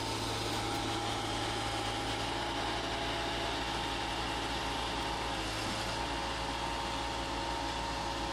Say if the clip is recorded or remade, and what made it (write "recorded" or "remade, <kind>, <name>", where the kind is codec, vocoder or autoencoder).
recorded